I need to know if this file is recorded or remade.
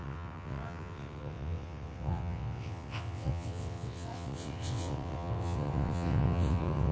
remade